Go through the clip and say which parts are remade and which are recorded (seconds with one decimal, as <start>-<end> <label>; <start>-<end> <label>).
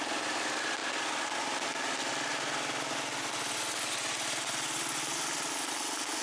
0.0-6.2 recorded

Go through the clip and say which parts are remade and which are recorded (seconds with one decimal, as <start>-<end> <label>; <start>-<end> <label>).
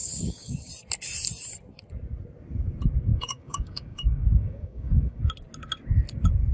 0.0-0.7 remade; 0.7-3.1 recorded; 3.1-5.2 remade; 5.2-6.5 recorded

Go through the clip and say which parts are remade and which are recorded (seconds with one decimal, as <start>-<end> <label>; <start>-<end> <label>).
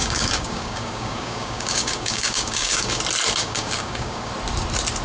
0.0-3.0 remade; 3.0-3.4 recorded; 3.4-4.3 remade; 4.3-5.0 recorded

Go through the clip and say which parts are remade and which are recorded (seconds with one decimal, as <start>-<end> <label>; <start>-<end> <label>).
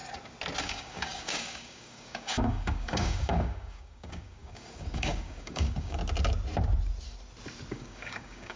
0.0-0.6 recorded; 0.6-6.0 remade; 6.0-7.7 recorded; 7.7-8.6 remade